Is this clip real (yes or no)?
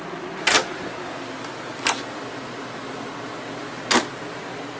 yes